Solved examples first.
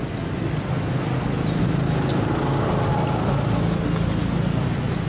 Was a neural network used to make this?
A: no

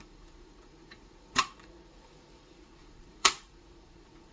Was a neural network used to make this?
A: yes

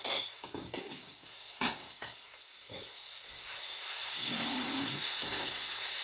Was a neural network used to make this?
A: yes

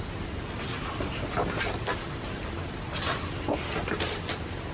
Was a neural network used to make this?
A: no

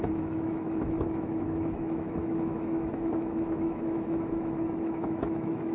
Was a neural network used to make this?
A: yes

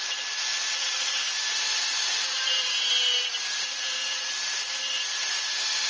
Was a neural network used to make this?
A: yes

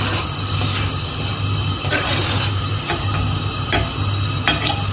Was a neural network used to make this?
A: no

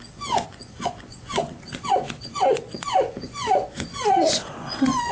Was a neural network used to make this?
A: yes